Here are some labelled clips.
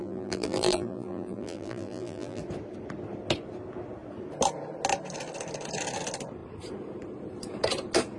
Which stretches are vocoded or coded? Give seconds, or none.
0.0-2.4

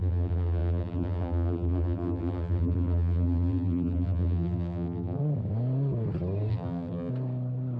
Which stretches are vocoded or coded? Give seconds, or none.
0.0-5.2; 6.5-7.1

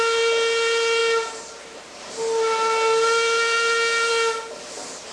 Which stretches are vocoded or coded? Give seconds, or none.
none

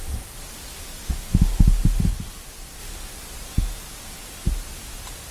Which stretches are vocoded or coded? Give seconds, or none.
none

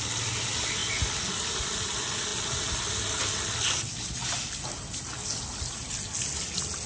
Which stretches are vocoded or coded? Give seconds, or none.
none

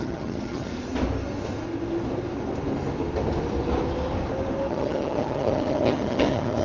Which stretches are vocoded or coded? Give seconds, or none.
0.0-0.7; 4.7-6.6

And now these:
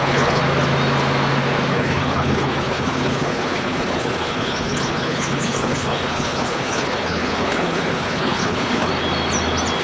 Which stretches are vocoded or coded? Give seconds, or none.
0.0-0.4; 1.7-8.9